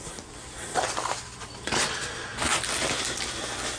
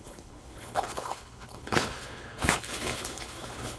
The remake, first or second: second